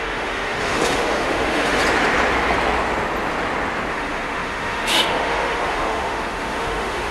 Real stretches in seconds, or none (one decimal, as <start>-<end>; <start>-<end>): 1.8-3.9